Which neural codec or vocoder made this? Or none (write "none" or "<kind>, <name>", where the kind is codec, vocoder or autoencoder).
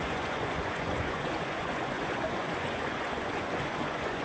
vocoder, Vocos